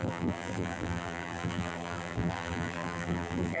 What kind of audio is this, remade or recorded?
remade